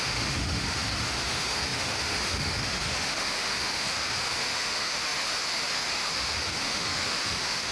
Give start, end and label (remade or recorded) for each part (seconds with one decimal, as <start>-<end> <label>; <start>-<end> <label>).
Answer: 0.0-7.7 remade